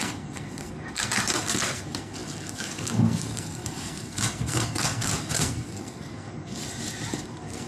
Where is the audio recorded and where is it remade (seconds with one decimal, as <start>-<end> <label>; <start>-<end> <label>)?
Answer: 0.0-6.6 remade; 6.6-7.1 recorded; 7.1-7.7 remade